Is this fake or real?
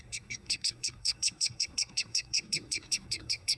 fake